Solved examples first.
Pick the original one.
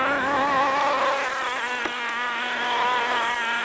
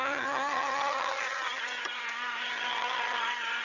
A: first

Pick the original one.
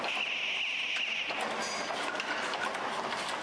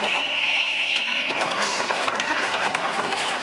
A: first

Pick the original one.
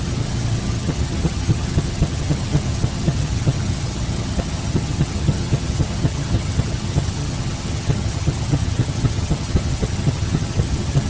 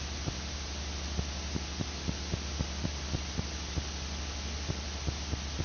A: second